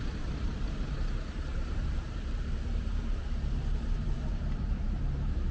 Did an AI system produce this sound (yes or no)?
yes